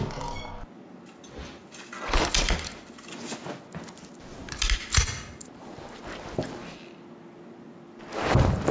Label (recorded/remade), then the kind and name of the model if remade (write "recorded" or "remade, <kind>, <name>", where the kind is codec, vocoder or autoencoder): recorded